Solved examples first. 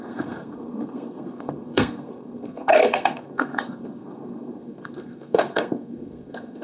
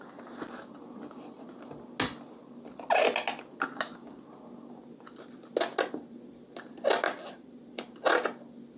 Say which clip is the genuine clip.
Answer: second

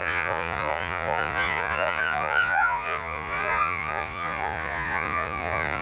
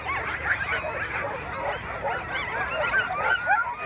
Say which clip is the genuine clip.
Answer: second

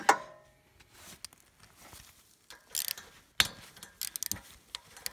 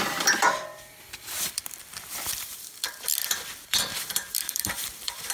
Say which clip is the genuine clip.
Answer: first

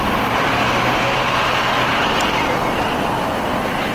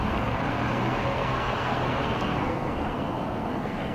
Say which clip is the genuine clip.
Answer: first